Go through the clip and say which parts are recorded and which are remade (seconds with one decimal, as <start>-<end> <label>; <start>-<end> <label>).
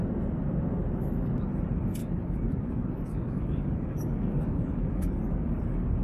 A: 0.0-2.0 recorded; 2.0-5.6 remade; 5.6-6.0 recorded